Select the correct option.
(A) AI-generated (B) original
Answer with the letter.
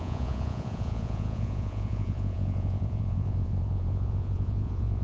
A